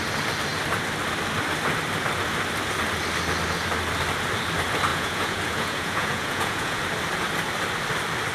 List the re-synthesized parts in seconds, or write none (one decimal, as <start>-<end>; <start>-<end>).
4.9-6.8